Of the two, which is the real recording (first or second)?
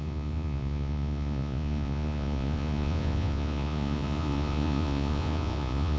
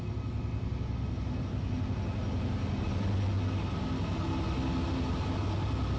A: second